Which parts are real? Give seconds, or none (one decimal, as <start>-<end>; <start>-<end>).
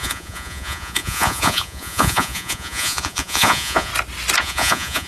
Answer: 3.9-4.4